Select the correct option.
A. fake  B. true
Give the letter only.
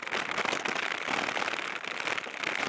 B